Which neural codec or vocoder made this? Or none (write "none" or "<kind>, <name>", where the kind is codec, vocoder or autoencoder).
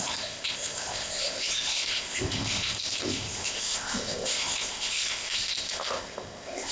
codec, ZipCodec